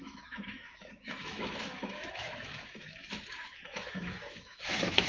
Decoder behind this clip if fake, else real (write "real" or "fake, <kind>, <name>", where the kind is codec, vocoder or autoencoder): fake, autoencoder, DAC-VAE